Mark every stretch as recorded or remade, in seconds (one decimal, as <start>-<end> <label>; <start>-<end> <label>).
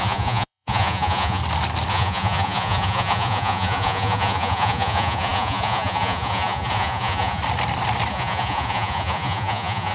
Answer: 0.0-1.4 remade; 1.4-1.9 recorded; 1.9-7.4 remade; 7.4-8.1 recorded; 8.1-9.9 remade